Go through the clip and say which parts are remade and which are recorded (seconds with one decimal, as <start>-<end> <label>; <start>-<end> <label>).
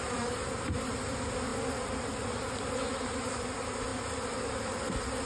0.0-5.3 recorded